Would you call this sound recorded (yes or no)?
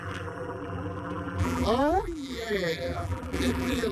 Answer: no